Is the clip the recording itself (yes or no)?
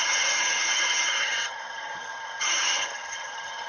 no